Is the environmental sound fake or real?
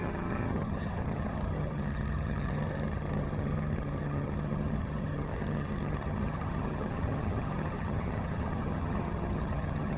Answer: fake